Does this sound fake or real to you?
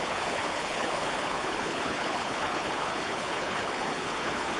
fake